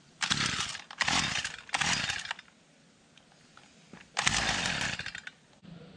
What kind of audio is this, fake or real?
real